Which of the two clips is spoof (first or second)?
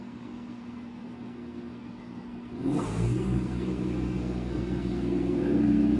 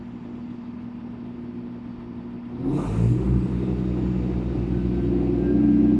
first